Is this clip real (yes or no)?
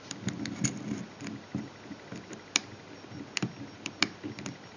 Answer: yes